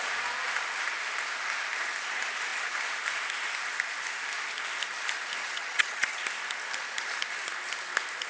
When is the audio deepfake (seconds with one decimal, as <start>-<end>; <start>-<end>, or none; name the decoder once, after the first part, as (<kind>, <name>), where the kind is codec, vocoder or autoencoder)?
5.4-6.2 (vocoder, HiFi-GAN)